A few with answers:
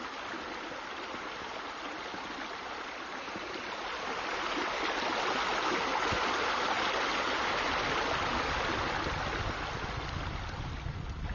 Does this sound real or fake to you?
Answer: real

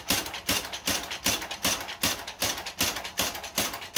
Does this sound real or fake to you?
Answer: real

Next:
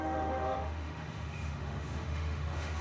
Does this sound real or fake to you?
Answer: fake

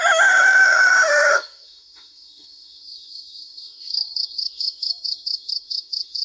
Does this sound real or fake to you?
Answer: fake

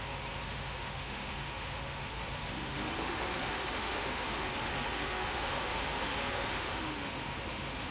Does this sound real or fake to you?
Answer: fake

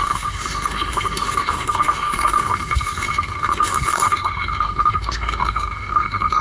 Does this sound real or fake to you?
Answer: fake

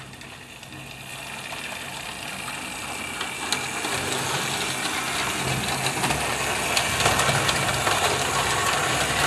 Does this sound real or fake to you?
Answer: real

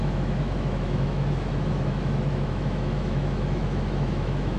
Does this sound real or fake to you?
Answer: fake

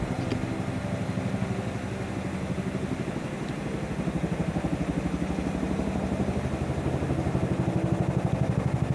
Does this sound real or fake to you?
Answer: real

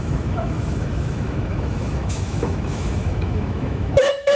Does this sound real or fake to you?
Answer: fake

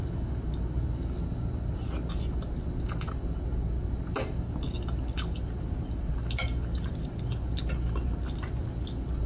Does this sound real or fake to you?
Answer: real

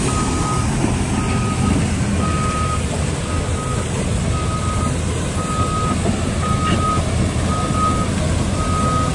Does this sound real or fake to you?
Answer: real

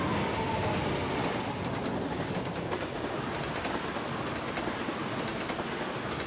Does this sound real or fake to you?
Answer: real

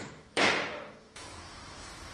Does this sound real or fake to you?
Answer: fake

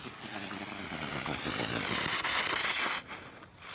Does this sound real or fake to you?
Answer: real